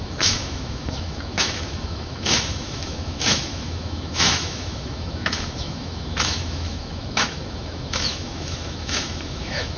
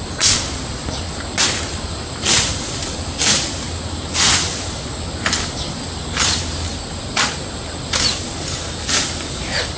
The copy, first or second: first